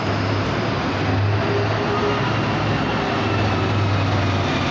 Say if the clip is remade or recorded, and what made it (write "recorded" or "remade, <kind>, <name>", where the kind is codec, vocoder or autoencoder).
recorded